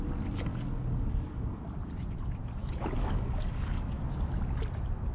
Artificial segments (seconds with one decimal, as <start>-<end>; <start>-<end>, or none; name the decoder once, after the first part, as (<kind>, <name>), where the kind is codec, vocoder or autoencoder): 0.5-1.6 (codec, DAC); 2.6-4.0